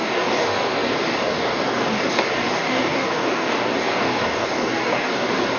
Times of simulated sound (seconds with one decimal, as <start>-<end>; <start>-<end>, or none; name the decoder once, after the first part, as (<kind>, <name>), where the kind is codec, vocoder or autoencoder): 0.0-5.6 (codec, DAC)